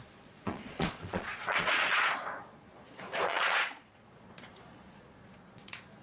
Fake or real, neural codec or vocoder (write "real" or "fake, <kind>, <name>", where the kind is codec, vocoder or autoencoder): fake, vocoder, Vocos